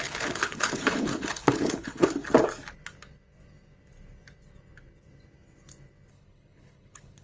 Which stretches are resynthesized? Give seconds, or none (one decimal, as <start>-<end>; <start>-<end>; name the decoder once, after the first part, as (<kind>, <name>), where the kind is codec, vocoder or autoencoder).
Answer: 0.0-2.2 (codec, HILCodec); 6.1-7.2